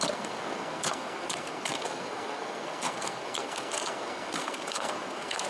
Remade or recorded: remade